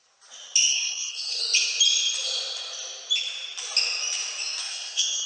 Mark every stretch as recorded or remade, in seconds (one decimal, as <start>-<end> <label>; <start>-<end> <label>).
0.0-0.7 recorded; 0.7-1.4 remade; 1.4-4.6 recorded; 4.6-5.3 remade

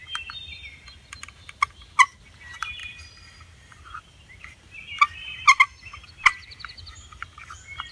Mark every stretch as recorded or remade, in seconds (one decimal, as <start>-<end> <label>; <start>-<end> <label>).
0.0-7.9 recorded

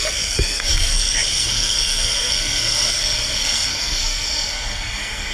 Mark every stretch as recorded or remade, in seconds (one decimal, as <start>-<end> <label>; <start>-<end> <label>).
0.0-5.3 remade

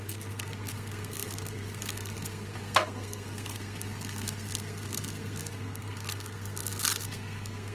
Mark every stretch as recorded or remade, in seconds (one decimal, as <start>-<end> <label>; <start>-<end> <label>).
0.0-7.7 remade

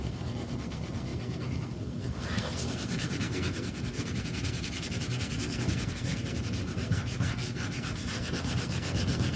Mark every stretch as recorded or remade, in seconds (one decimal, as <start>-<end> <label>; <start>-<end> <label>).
0.0-9.4 remade

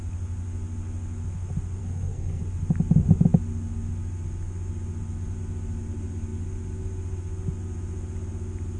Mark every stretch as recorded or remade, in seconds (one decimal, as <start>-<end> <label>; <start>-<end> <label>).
0.0-1.8 recorded; 1.8-2.4 remade; 2.4-8.8 recorded

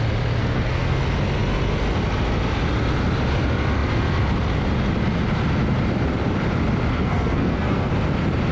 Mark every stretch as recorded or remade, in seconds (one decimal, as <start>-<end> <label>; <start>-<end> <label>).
0.0-0.4 recorded; 0.4-1.0 remade; 1.0-6.9 recorded; 6.9-7.9 remade; 7.9-8.5 recorded

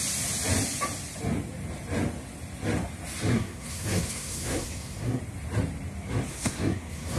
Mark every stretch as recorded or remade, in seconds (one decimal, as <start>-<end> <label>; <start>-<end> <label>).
0.0-3.3 recorded; 3.3-5.2 remade; 5.2-6.3 recorded; 6.3-7.2 remade